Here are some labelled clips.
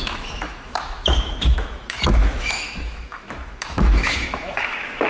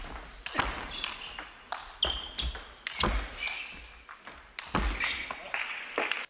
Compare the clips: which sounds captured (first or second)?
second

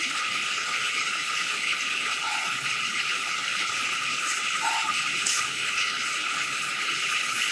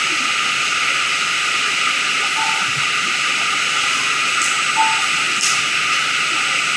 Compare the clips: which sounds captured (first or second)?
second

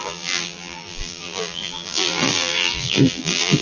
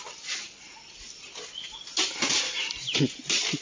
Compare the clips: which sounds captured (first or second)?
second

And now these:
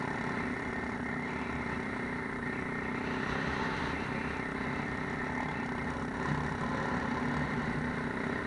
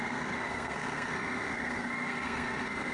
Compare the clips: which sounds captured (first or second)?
first